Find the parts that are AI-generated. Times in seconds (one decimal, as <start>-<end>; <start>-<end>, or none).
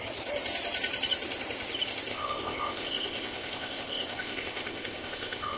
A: 2.1-5.6